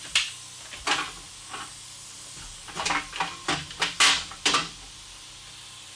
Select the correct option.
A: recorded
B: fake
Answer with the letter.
A